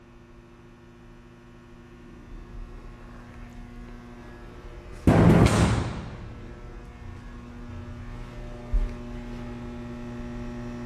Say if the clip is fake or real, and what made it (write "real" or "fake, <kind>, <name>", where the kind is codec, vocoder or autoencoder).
real